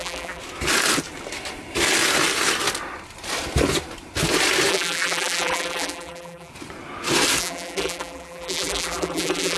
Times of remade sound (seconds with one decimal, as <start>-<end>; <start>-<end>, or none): 0.0-0.4; 4.7-6.5; 7.4-9.6